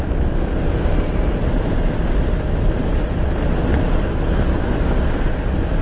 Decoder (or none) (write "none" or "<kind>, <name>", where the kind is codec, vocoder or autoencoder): none